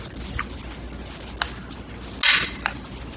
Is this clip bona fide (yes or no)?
yes